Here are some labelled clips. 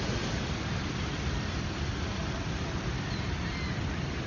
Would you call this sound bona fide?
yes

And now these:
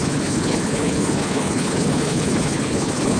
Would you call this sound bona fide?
no